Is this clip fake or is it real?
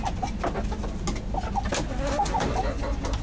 real